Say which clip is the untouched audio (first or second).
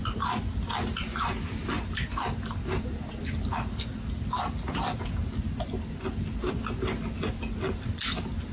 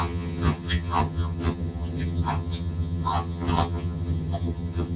first